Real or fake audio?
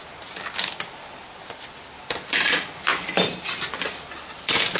real